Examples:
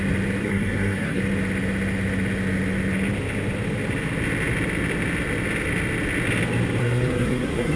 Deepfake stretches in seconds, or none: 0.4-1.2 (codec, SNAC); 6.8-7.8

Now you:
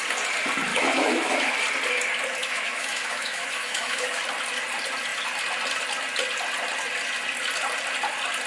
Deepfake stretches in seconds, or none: 0.7-1.5 (autoencoder, DAC-VAE); 2.4-4.2

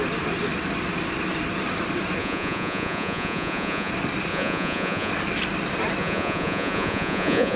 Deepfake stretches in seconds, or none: 2.2-3.9 (vocoder, Vocos); 4.3-5.1; 6.0-7.6

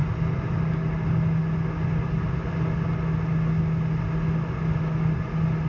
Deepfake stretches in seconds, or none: none

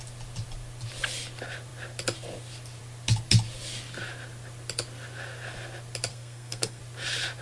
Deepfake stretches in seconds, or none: 6.1-6.8 (codec, SNAC)